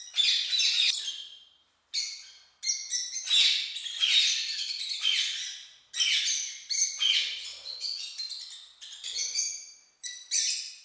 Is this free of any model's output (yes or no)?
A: yes